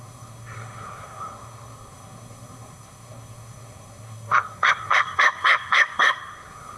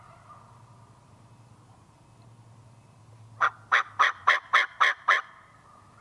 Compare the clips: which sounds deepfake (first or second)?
first